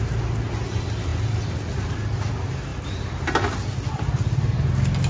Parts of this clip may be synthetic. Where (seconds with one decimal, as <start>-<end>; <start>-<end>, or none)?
none